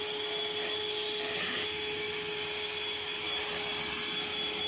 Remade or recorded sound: recorded